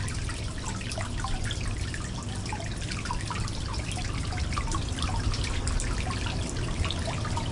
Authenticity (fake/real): real